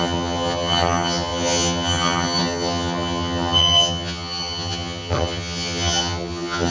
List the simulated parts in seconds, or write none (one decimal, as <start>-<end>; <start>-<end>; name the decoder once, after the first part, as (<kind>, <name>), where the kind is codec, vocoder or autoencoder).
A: 0.0-6.7 (vocoder, HiFi-GAN)